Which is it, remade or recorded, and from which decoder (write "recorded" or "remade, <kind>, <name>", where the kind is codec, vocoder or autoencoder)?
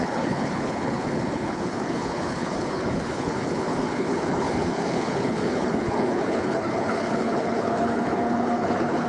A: remade, codec, HILCodec